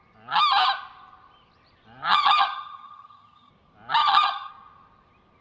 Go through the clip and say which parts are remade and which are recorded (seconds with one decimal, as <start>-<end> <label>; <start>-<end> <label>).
0.0-2.1 recorded; 2.1-3.5 remade; 3.5-4.0 recorded; 4.0-4.5 remade; 4.5-5.4 recorded